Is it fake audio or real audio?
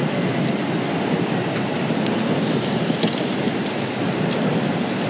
real